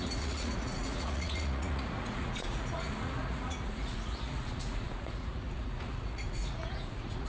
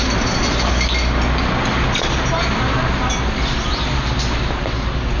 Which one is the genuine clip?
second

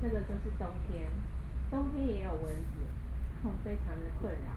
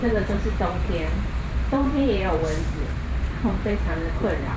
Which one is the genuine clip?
first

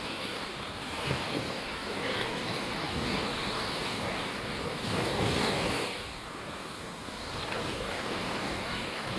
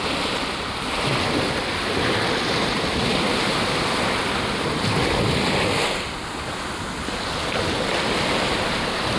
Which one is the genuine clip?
second